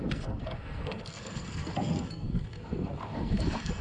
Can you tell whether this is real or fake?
fake